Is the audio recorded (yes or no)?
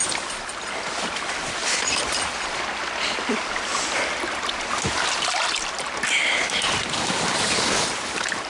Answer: yes